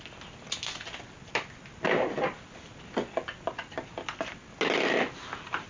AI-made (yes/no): no